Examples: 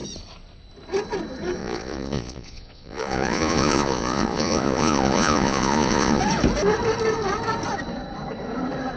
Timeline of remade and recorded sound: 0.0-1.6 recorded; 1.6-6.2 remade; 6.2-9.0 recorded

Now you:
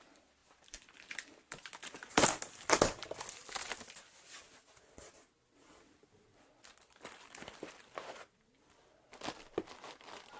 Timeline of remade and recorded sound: 0.0-10.4 recorded